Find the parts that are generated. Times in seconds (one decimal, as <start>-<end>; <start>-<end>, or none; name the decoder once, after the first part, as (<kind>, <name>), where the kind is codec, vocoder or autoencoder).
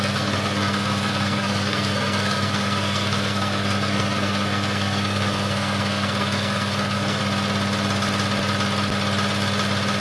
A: 0.0-7.2 (codec, SNAC)